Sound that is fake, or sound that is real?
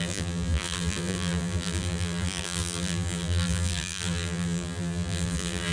fake